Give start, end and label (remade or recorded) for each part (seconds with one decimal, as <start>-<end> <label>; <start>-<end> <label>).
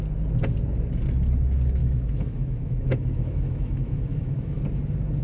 0.0-1.8 recorded; 1.8-4.6 remade; 4.6-5.2 recorded